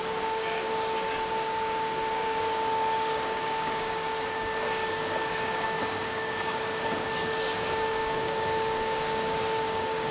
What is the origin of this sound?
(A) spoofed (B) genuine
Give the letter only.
A